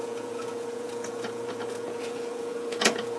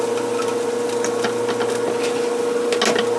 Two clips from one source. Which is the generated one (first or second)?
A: first